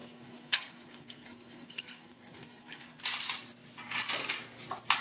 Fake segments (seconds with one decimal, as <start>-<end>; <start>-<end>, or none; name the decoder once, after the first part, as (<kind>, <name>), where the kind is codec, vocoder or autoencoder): 0.0-3.0 (codec, SNAC)